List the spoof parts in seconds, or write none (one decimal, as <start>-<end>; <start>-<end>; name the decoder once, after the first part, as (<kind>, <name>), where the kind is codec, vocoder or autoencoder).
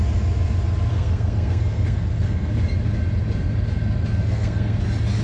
0.9-2.5 (codec, SNAC); 4.2-4.8